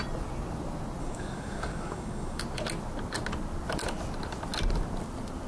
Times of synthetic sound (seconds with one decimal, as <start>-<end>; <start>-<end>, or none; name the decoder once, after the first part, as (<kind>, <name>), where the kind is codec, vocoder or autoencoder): 1.0-2.4 (codec, DAC)